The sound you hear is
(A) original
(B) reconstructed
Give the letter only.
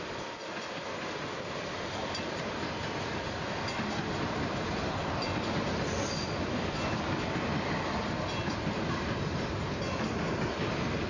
A